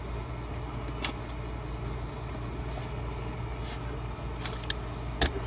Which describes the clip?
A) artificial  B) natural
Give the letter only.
B